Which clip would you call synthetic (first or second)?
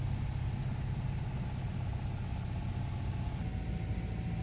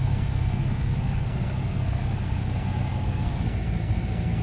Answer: second